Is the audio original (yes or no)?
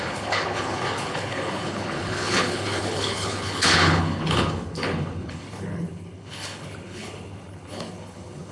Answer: no